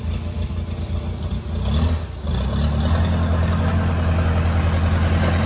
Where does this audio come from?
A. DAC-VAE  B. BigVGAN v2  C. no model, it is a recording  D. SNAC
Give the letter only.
C